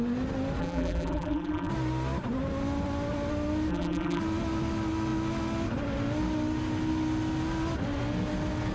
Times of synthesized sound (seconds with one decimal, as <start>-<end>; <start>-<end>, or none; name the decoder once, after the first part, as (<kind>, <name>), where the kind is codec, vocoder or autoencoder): 0.6-1.7 (vocoder, BigVGAN v2); 3.7-4.2